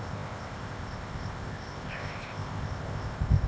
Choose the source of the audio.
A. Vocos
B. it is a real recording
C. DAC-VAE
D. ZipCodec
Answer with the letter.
D